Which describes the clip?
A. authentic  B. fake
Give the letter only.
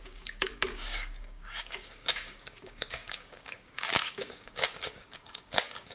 B